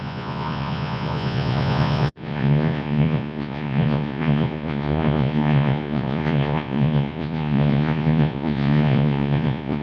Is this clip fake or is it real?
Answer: fake